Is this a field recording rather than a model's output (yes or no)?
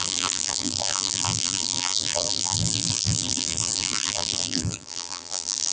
no